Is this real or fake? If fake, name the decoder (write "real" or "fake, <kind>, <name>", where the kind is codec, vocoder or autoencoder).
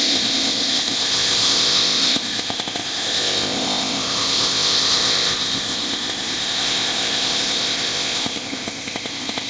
fake, codec, ZipCodec